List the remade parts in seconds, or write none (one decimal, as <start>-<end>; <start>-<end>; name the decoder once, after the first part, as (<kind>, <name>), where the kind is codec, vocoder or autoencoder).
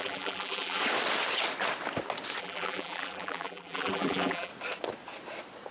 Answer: 0.0-0.8 (vocoder, BigVGAN v2); 2.4-4.5